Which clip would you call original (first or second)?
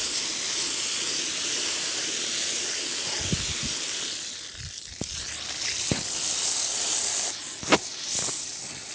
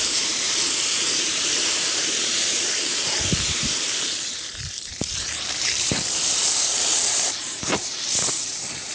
first